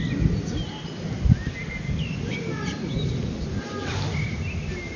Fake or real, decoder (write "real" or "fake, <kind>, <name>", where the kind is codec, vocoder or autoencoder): real